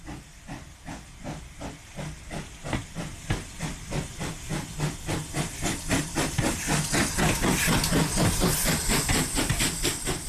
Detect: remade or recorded recorded